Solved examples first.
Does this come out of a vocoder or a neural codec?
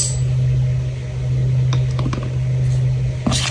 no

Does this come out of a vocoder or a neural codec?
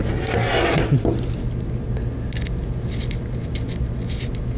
no